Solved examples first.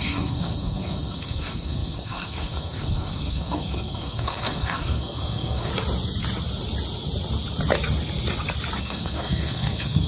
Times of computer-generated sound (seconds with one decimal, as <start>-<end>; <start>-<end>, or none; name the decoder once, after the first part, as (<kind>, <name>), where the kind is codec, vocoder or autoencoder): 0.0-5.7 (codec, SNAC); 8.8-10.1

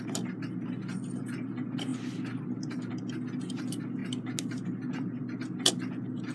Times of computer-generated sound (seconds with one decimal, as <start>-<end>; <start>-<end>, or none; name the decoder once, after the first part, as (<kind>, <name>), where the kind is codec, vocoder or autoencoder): none

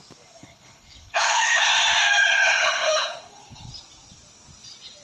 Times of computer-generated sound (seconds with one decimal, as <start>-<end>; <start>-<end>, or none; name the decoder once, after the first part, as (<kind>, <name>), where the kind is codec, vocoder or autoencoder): 0.4-1.7 (codec, HILCodec); 2.2-3.7